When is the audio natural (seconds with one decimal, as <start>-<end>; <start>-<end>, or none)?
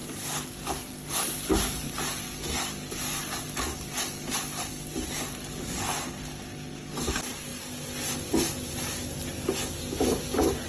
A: 0.0-10.7